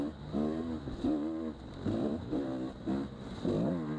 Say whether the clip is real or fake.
real